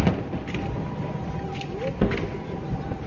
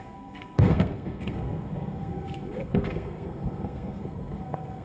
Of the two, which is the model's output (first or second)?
second